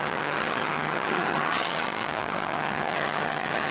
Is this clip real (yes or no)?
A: no